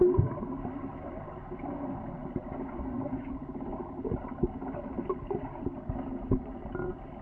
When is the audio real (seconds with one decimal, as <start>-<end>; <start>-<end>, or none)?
0.0-7.2